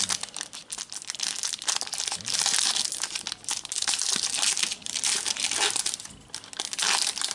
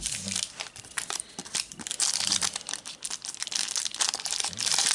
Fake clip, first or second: second